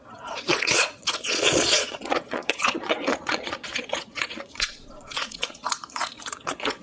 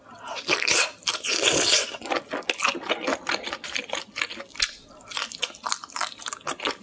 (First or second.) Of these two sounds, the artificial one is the first